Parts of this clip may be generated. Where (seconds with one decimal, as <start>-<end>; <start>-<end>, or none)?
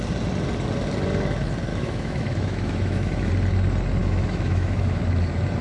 1.7-3.3; 4.0-5.0